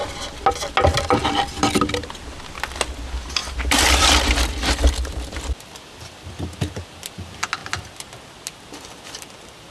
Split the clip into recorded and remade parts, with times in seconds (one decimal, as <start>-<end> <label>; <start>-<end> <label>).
0.0-9.7 recorded